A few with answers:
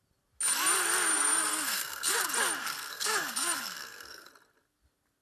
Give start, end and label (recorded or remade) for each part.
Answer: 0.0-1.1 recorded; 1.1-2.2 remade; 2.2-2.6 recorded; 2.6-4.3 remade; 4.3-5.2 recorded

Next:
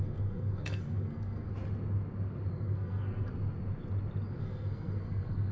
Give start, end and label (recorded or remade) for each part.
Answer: 0.0-1.5 remade; 1.5-2.5 recorded; 2.5-3.3 remade; 3.3-4.4 recorded; 4.4-5.5 remade

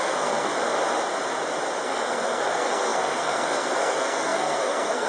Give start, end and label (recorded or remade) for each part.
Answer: 0.0-0.5 remade; 0.5-1.8 recorded; 1.8-5.1 remade